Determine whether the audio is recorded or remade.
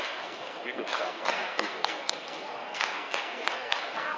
remade